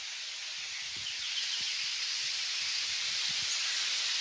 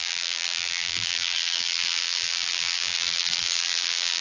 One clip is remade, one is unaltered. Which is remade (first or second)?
second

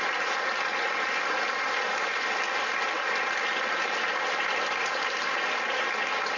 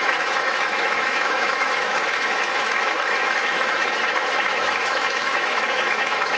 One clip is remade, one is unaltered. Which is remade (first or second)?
second